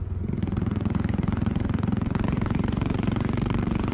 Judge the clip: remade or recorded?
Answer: remade